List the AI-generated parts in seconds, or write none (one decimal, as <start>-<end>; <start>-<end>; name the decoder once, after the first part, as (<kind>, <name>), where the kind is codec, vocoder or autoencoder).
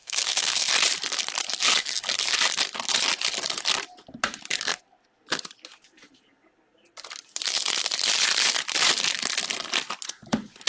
0.0-0.7 (codec, SNAC)